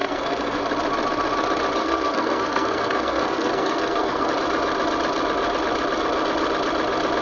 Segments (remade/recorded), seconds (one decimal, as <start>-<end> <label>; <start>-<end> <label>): 0.0-0.6 remade; 0.6-1.8 recorded; 1.8-4.3 remade; 4.3-7.2 recorded